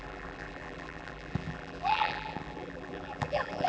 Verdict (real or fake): fake